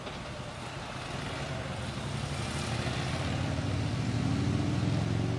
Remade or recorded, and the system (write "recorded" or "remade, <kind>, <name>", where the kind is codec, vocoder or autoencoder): recorded